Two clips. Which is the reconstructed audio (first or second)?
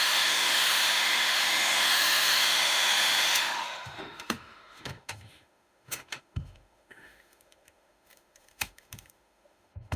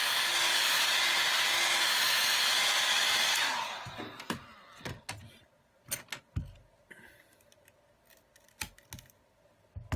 first